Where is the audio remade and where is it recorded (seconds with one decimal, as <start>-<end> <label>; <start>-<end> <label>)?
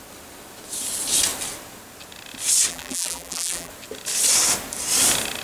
0.0-2.7 recorded; 2.7-3.7 remade; 3.7-5.4 recorded